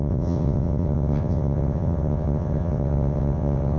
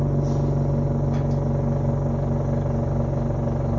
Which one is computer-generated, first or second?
first